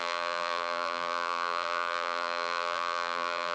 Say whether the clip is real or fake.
fake